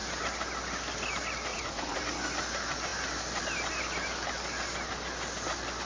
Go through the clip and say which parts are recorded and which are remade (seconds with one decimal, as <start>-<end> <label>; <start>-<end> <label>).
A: 0.0-1.5 recorded; 1.5-2.0 remade; 2.0-5.9 recorded